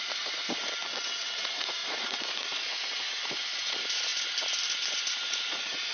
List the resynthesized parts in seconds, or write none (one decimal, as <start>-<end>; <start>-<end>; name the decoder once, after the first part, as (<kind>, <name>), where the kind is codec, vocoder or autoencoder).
0.0-0.6 (vocoder, Vocos); 1.2-4.1; 5.1-5.9